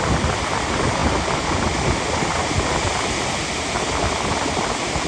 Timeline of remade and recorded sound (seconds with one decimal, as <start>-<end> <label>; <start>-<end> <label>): 0.0-5.1 recorded